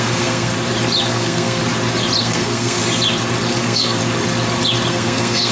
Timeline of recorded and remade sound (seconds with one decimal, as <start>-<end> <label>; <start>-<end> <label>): 0.0-0.5 remade; 0.5-1.1 recorded; 1.1-1.6 remade; 1.6-2.2 recorded; 2.2-2.8 remade; 2.8-3.6 recorded; 3.6-4.0 remade; 4.0-4.9 recorded; 4.9-5.5 remade